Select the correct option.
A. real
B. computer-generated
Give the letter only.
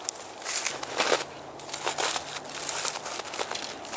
A